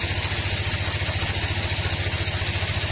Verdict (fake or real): real